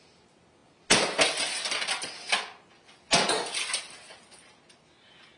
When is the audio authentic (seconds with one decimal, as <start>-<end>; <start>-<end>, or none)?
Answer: 0.0-5.4